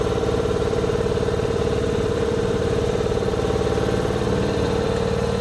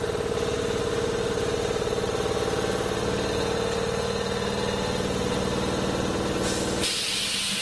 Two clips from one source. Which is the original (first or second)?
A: second